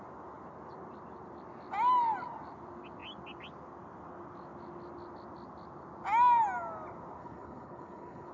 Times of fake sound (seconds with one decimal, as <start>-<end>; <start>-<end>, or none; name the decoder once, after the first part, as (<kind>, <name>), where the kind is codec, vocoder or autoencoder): 7.2-8.3 (codec, HILCodec)